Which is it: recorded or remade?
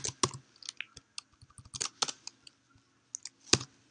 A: recorded